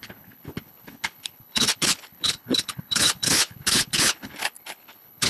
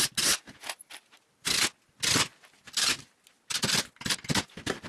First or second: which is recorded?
second